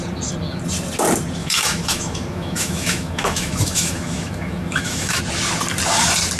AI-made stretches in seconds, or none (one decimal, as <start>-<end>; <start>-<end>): 1.4-5.2